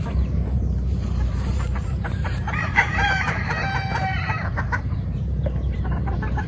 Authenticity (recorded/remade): remade